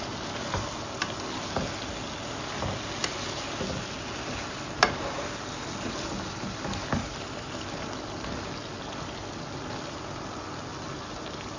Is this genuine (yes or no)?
yes